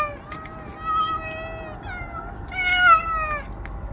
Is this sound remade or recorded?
recorded